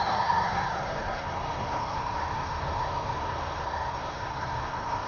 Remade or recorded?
remade